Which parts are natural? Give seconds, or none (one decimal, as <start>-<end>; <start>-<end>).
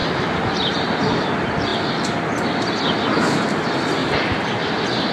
0.8-4.0; 4.6-5.1